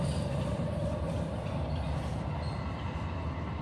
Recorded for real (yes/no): yes